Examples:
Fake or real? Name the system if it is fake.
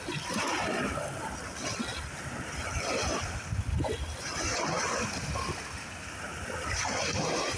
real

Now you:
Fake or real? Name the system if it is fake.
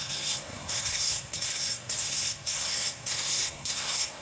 fake, codec, SNAC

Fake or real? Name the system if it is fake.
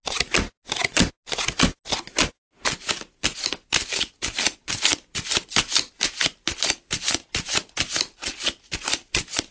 real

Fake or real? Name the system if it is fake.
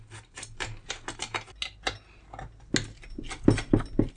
real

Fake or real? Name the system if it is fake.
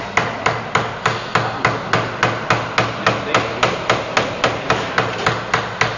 real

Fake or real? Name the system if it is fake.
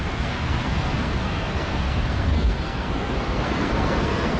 fake, codec, SNAC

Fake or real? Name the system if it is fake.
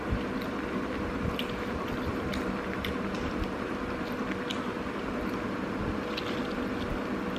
real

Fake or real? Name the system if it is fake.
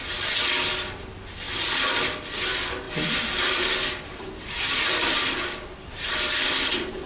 real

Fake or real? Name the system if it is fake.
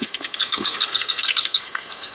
fake, codec, SNAC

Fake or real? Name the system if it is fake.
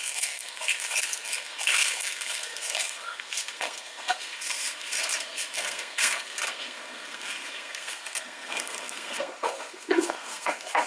fake, codec, SNAC